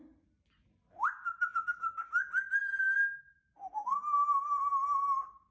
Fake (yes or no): no